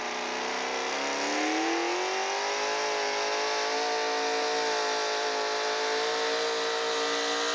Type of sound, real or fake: real